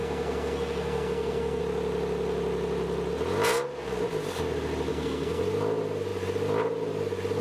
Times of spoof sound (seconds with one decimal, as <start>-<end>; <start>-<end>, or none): 0.0-1.6; 4.9-5.4